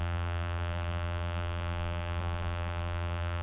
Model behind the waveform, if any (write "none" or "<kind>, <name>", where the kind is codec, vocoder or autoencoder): vocoder, BigVGAN v2